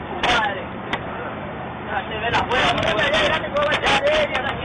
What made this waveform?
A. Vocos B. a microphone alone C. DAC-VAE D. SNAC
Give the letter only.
B